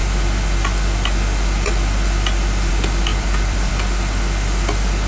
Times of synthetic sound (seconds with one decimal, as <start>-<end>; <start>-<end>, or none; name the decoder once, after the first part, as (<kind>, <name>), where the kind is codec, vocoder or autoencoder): 3.1-3.7 (vocoder, BigVGAN v2)

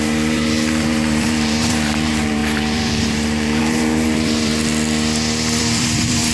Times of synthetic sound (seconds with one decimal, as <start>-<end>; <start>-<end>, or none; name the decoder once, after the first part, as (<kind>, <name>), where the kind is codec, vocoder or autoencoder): 0.0-4.5 (vocoder, BigVGAN v2); 5.6-6.3

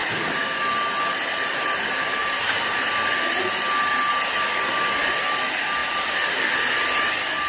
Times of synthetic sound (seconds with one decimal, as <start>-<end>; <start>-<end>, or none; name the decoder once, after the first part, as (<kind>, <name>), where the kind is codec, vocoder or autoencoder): 2.2-4.1 (vocoder, BigVGAN v2)

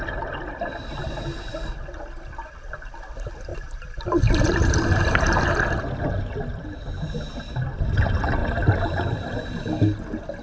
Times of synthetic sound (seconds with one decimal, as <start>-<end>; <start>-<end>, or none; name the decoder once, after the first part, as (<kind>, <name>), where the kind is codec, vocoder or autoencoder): 3.5-5.4 (vocoder, BigVGAN v2); 8.4-9.6